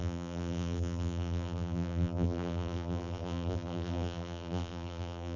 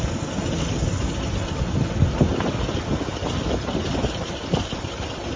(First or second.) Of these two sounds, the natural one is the second